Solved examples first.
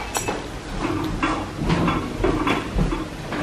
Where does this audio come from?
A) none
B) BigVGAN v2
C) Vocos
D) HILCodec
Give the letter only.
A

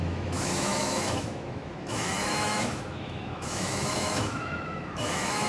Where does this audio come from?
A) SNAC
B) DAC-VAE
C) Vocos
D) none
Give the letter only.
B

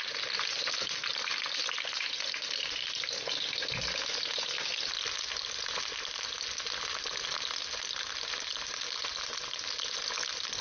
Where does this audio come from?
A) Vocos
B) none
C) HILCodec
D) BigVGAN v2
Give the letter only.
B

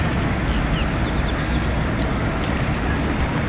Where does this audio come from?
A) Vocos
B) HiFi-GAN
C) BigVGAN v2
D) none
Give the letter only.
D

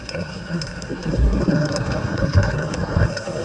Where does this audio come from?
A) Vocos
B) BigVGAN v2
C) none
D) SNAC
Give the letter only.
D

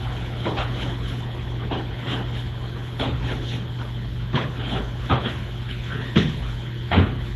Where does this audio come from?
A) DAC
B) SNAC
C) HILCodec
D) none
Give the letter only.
C